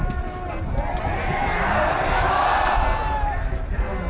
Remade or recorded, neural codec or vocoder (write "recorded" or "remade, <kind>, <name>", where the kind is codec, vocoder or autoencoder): recorded